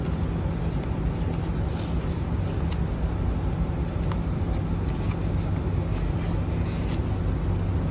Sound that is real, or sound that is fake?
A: real